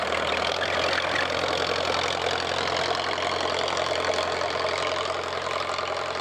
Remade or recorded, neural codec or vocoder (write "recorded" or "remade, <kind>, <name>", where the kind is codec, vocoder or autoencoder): recorded